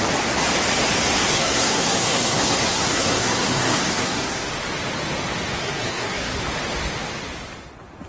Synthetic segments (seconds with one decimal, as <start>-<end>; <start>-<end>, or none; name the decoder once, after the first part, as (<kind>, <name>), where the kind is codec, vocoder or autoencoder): 1.2-4.5 (codec, SNAC); 5.6-6.4